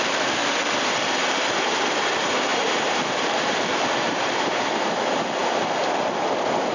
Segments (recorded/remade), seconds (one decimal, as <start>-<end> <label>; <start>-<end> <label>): 0.0-0.4 remade; 0.4-0.9 recorded; 0.9-5.4 remade; 5.4-6.7 recorded